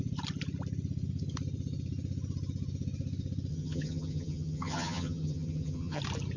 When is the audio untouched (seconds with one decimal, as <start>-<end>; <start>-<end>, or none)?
0.0-3.5; 6.0-6.4